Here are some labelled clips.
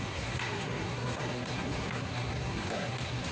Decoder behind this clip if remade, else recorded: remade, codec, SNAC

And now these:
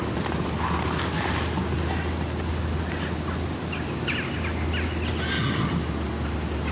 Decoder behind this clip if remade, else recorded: recorded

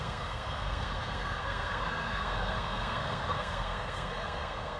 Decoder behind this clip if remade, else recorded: remade, codec, SNAC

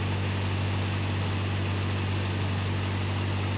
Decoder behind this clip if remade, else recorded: recorded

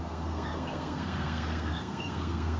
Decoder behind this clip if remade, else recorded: remade, codec, SNAC